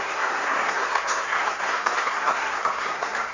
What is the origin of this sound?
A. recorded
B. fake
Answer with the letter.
B